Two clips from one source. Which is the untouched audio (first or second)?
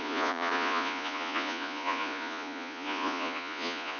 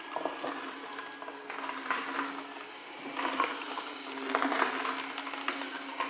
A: second